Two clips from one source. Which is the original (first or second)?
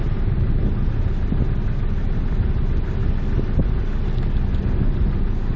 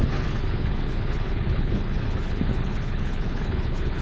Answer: first